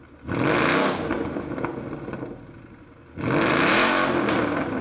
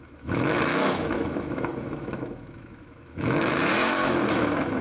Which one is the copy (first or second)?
second